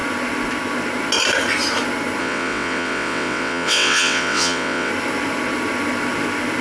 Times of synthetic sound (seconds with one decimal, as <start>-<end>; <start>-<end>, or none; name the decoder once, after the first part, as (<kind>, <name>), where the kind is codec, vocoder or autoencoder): 2.2-4.9 (vocoder, WaveNeXt)